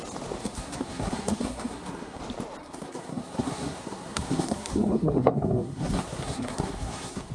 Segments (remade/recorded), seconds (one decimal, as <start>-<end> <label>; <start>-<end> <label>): 0.0-0.4 recorded; 0.4-2.2 remade; 2.2-2.6 recorded; 2.6-7.3 remade